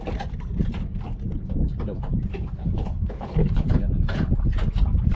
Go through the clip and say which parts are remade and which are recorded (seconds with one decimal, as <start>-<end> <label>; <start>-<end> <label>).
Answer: 0.0-2.6 recorded; 2.6-3.8 remade; 3.8-5.1 recorded